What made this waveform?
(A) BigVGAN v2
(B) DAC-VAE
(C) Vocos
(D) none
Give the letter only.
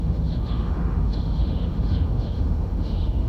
B